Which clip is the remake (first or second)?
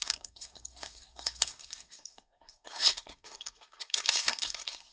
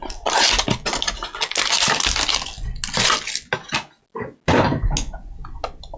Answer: first